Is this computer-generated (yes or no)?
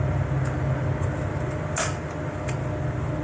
no